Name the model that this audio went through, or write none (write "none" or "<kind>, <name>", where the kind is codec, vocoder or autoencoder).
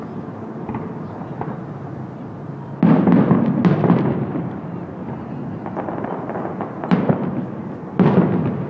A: none